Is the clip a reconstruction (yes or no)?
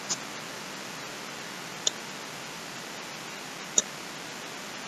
no